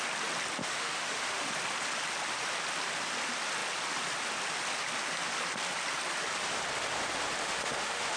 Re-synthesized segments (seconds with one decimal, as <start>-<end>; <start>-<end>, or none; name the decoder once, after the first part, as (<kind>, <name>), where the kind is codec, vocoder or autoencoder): 0.6-1.5 (autoencoder, DAC-VAE); 7.4-8.2